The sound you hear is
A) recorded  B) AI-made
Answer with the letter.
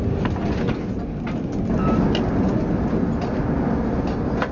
A